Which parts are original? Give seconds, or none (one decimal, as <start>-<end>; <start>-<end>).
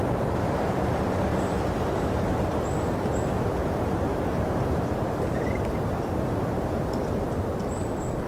0.0-3.6; 5.5-8.3